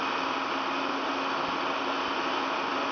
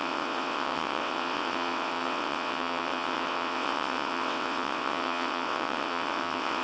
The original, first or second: first